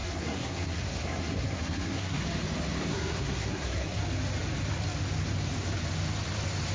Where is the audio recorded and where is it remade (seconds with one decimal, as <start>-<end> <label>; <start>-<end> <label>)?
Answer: 0.0-2.2 remade; 2.2-2.9 recorded; 2.9-4.0 remade; 4.0-6.7 recorded